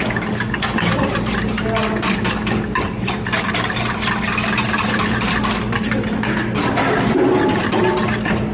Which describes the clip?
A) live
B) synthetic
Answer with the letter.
A